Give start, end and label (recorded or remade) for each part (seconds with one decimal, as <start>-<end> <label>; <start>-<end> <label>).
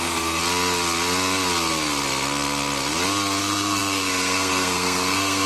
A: 0.0-0.4 remade; 0.4-3.4 recorded; 3.4-5.5 remade